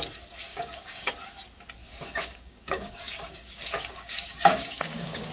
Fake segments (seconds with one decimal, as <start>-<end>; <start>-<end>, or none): 0.5-1.1; 1.8-5.3